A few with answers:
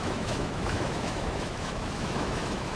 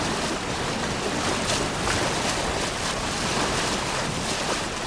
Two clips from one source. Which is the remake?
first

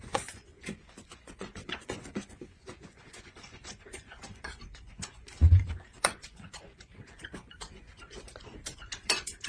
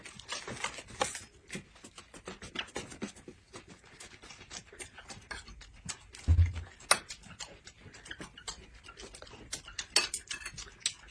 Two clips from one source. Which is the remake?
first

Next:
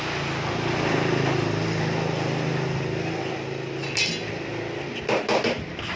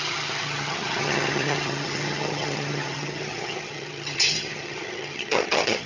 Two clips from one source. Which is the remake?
second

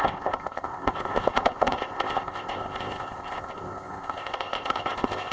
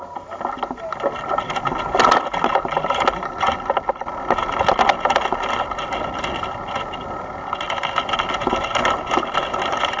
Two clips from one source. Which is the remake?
first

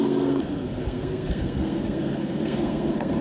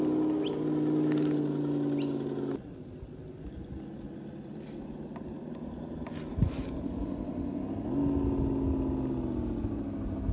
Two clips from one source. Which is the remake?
first